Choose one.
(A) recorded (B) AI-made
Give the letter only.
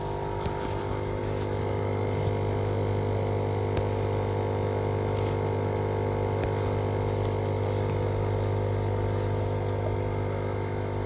A